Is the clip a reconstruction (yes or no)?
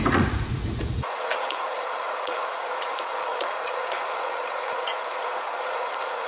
yes